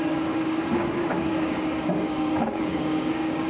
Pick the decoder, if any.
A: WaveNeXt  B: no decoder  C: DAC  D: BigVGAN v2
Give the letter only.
C